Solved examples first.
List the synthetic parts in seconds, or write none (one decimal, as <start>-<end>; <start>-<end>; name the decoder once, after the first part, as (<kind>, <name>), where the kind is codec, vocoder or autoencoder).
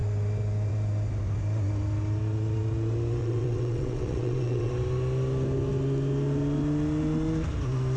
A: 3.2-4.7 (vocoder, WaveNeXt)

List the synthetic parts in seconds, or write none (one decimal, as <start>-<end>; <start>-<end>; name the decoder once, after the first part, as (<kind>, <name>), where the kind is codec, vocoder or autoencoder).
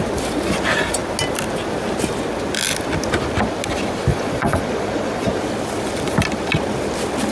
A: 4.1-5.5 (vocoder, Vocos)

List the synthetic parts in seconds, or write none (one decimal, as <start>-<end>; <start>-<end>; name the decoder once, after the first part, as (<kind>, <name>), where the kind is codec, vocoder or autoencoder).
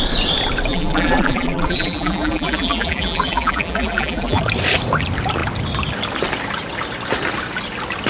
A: 0.7-4.4 (vocoder, BigVGAN v2)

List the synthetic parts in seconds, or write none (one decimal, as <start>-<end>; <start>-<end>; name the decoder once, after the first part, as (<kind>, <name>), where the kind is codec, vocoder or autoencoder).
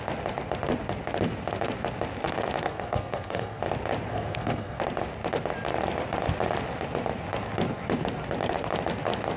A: 2.6-3.6 (codec, SNAC); 4.1-4.8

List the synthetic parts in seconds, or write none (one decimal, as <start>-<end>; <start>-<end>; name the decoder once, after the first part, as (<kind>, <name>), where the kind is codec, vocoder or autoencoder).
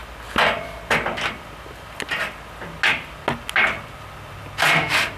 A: none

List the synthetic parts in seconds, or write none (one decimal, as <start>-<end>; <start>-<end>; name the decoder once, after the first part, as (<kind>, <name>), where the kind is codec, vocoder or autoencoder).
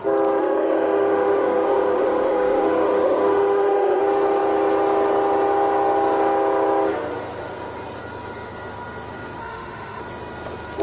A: 0.4-4.0 (autoencoder, DAC-VAE); 9.4-10.0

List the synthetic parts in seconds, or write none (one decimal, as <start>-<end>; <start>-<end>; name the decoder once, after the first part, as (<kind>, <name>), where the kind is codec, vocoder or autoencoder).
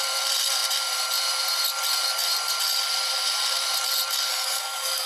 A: 4.3-5.1 (codec, DAC)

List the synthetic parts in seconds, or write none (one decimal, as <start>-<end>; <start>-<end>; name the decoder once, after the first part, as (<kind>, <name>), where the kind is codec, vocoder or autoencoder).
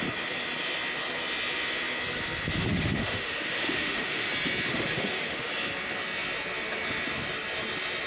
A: 2.7-4.3 (autoencoder, DAC-VAE); 4.7-5.5